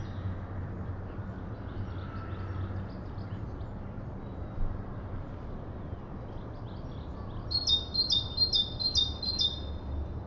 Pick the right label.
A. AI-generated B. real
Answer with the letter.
B